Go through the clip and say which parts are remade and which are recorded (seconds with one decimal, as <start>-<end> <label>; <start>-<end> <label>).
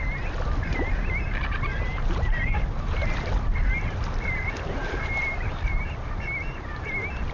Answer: 0.0-1.7 recorded; 1.7-3.3 remade; 3.3-4.8 recorded; 4.8-5.8 remade; 5.8-7.3 recorded